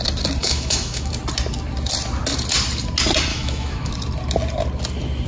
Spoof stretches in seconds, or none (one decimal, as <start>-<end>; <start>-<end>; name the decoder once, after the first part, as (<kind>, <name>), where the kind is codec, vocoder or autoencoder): 0.4-1.1 (autoencoder, DAC-VAE); 3.3-3.9